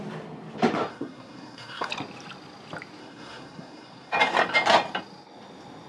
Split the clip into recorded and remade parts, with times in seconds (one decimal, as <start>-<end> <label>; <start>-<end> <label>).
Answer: 0.0-0.9 recorded; 0.9-1.9 remade; 1.9-3.0 recorded; 3.0-4.1 remade; 4.1-5.9 recorded